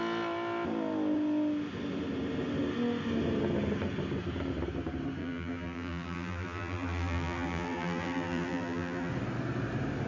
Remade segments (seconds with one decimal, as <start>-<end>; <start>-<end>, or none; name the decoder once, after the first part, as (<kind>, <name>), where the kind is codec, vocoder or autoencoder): 5.2-9.1 (vocoder, BigVGAN v2)